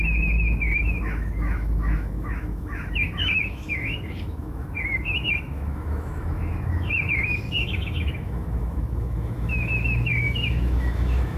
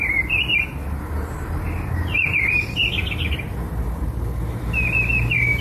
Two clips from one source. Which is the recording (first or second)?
second